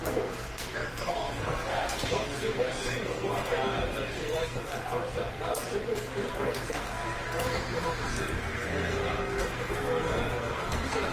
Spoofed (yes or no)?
yes